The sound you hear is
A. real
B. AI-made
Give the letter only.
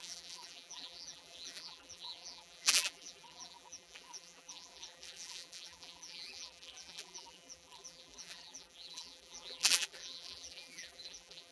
B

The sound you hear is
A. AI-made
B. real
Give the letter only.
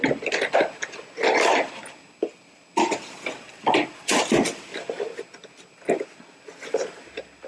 B